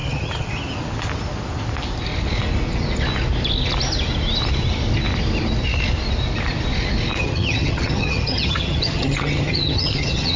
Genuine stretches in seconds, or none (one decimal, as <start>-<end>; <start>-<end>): 0.5-7.2